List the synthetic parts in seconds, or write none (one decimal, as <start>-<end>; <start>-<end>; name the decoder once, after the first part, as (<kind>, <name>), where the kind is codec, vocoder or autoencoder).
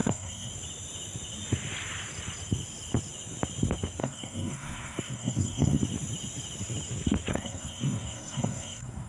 0.0-0.5 (codec, SNAC); 4.0-5.8; 7.3-9.1